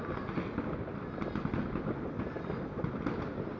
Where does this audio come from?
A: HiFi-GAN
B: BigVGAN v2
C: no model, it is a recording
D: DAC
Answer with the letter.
C